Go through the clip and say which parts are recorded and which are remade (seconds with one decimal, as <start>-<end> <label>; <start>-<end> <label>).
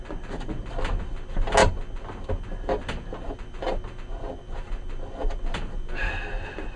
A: 0.0-6.8 recorded